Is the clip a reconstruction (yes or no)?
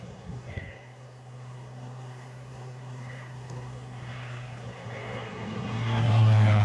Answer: yes